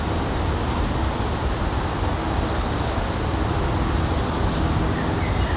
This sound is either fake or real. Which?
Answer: real